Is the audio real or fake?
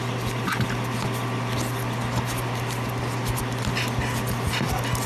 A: real